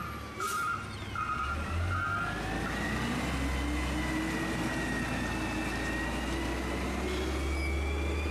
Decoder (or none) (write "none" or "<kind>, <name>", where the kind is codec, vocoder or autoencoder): none